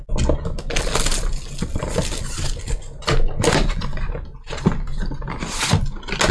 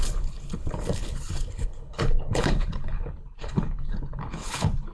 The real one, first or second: first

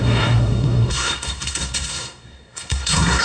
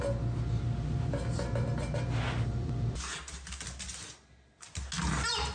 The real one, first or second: second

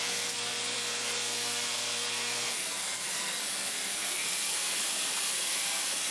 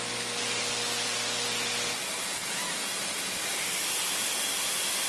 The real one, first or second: second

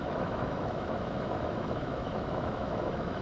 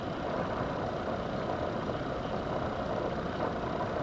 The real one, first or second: second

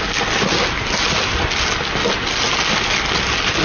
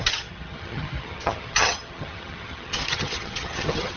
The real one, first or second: first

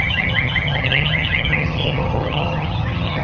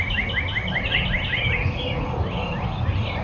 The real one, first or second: second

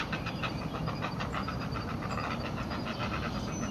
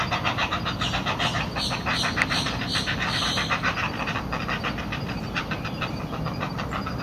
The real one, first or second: second